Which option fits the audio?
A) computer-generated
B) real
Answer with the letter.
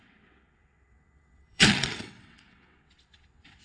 A